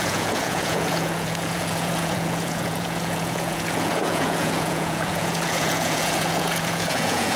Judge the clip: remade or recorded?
remade